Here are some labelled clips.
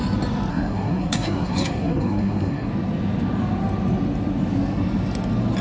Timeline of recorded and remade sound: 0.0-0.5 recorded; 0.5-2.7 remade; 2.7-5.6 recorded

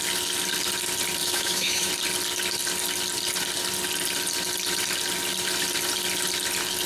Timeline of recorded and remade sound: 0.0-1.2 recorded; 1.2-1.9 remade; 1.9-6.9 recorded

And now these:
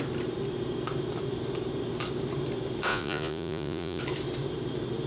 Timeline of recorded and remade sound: 0.0-2.9 recorded; 2.9-4.0 remade; 4.0-5.1 recorded

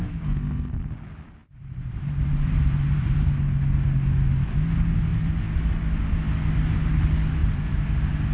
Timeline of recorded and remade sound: 0.0-1.4 recorded; 1.4-3.3 remade; 3.3-7.4 recorded; 7.4-7.9 remade; 7.9-8.3 recorded

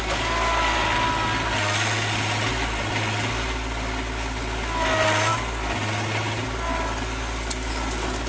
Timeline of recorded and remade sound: 0.0-8.3 recorded